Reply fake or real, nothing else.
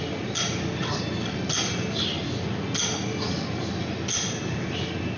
real